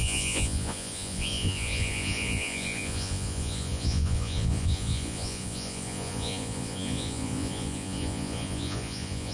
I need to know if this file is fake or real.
fake